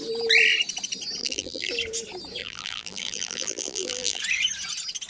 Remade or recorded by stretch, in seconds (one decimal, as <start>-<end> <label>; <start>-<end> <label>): 0.0-1.2 recorded; 1.2-1.7 remade; 1.7-2.4 recorded; 2.4-4.2 remade; 4.2-5.1 recorded